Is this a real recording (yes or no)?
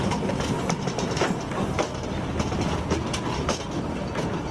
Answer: yes